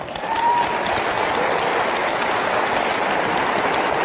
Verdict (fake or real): real